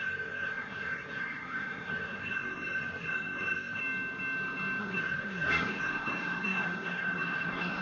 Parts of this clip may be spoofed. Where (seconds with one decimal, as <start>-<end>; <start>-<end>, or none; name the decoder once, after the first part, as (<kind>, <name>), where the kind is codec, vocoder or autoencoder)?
0.0-3.8 (codec, SNAC); 4.8-7.8